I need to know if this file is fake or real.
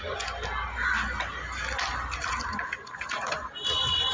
real